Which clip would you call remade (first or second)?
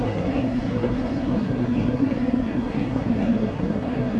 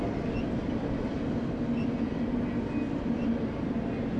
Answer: first